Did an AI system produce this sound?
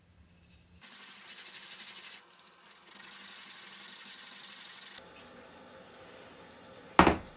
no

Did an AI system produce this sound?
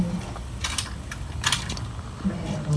no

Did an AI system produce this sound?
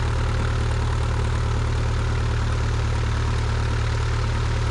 no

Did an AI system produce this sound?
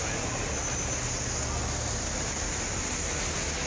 no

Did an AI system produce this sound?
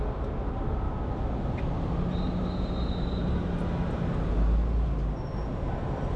no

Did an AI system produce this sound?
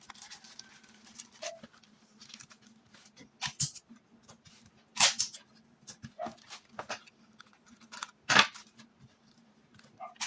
no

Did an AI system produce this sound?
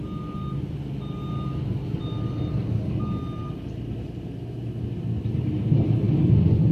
no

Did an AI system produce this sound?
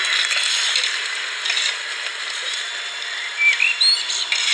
no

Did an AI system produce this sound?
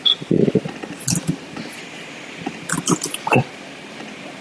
no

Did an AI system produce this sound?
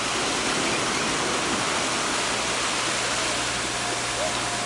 no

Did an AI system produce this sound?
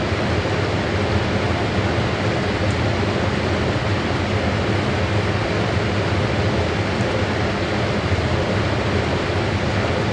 no